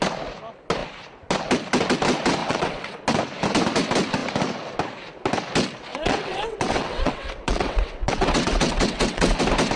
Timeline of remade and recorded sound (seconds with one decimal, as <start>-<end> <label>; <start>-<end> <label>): 0.0-2.4 recorded; 2.4-3.0 remade; 3.0-5.9 recorded; 5.9-9.4 remade; 9.4-9.8 recorded